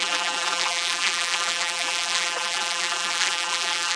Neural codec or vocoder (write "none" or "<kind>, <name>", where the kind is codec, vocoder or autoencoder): vocoder, BigVGAN v2